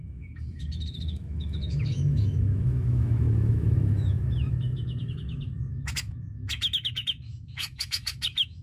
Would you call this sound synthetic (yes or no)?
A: yes